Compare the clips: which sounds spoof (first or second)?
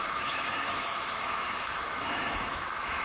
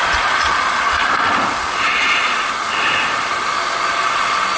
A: first